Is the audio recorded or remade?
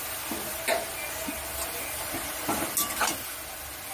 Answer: recorded